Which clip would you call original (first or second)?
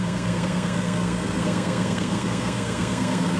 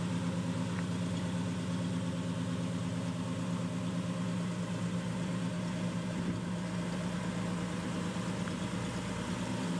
second